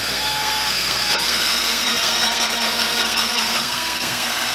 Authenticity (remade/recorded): remade